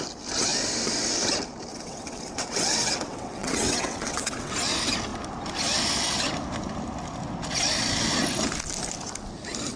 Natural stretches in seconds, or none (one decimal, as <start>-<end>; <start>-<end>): 0.0-1.7; 4.5-9.8